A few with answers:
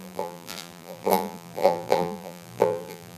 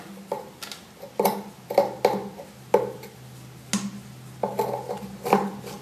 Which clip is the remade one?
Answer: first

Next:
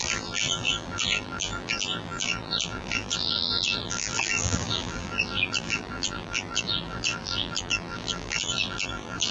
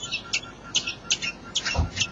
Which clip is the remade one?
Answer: first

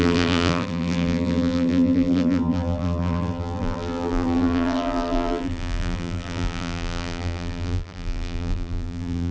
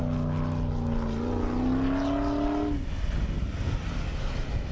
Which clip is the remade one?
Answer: first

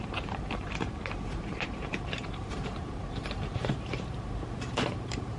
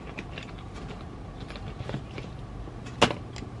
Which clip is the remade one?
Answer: first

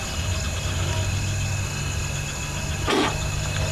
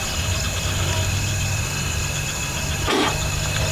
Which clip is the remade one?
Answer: second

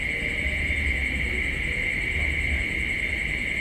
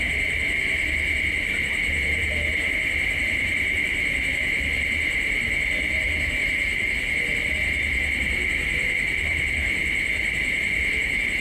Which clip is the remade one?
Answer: second